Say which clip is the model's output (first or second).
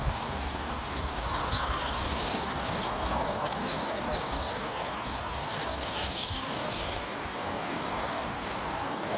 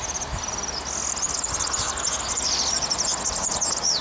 first